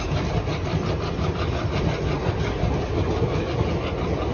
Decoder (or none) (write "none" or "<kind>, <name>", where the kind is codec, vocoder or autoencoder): none